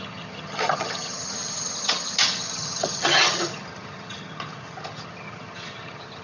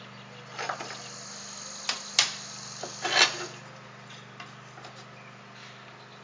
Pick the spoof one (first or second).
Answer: first